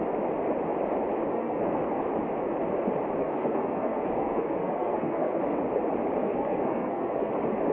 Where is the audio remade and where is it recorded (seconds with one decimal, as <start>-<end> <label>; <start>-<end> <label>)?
0.0-1.3 recorded; 1.3-2.0 remade; 2.0-3.2 recorded; 3.2-5.4 remade; 5.4-6.2 recorded; 6.2-7.3 remade; 7.3-7.7 recorded